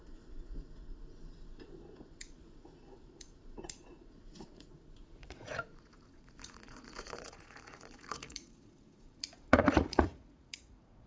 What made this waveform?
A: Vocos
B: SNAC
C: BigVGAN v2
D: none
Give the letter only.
A